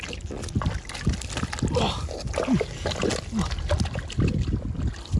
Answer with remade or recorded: recorded